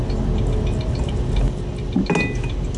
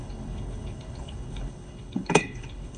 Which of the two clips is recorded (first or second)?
first